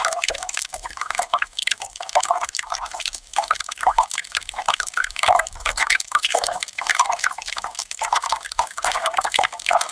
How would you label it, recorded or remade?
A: remade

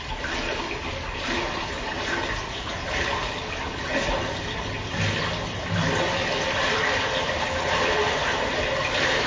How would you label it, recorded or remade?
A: recorded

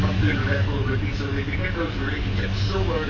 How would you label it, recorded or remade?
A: remade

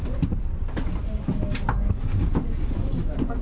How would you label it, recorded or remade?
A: recorded